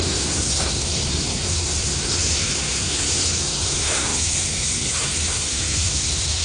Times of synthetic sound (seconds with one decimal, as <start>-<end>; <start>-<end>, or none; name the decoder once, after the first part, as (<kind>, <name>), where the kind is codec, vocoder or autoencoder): 0.0-6.4 (codec, SNAC)